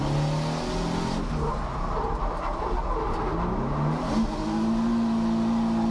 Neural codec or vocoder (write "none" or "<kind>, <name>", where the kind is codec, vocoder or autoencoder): none